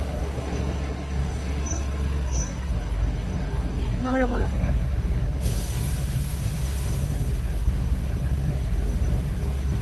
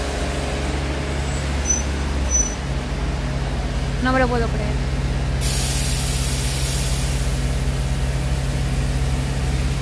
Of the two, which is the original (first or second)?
second